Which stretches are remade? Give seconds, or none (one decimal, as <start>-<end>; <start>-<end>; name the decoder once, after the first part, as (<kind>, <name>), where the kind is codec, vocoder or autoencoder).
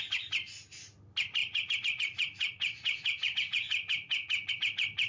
1.4-4.5 (vocoder, Vocos)